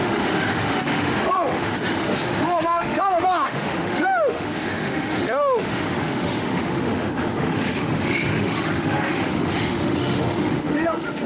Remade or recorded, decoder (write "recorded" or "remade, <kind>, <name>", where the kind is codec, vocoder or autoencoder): remade, autoencoder, DAC-VAE